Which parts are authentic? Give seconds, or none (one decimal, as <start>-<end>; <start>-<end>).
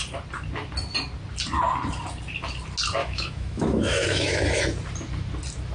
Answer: 0.0-3.0; 4.6-5.7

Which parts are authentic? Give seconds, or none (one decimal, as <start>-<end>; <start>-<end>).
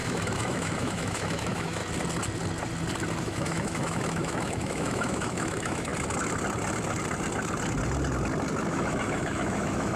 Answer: 1.8-3.2; 5.9-8.7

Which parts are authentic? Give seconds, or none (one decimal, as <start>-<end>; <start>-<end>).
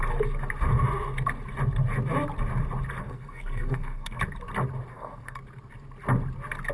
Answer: 0.0-3.0; 4.2-4.9; 5.4-6.7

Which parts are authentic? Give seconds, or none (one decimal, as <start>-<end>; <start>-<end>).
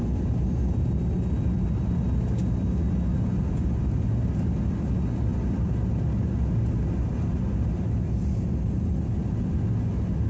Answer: 0.0-10.3